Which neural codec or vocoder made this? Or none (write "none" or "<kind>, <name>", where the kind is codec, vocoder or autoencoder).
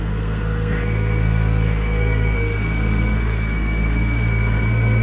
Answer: codec, SNAC